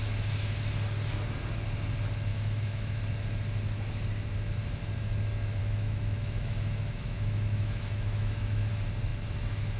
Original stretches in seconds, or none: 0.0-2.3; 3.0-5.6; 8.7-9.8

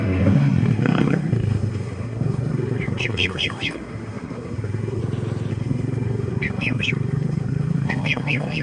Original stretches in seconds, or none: 5.0-5.5